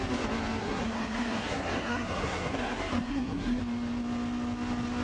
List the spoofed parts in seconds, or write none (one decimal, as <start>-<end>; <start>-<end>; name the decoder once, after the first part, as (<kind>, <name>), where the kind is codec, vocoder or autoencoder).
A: 0.6-3.6 (codec, SNAC)